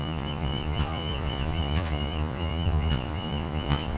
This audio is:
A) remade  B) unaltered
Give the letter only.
A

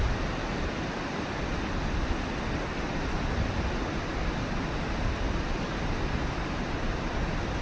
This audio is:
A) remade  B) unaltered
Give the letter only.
B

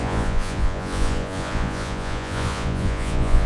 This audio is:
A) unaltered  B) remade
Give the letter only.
B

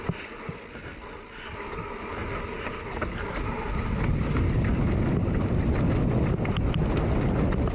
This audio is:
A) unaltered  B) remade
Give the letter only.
A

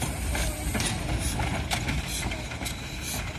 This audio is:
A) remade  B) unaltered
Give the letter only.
B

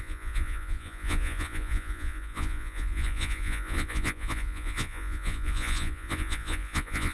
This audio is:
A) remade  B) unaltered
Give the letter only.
A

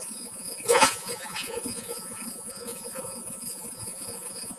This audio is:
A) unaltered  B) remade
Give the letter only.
B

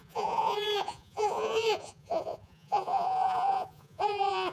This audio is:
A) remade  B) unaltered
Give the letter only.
A